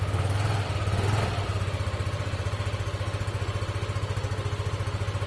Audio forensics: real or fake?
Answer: real